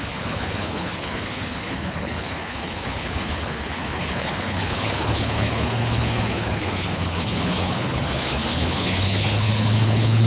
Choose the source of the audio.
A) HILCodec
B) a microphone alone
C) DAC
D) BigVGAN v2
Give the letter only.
A